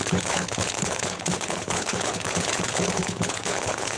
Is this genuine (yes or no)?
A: no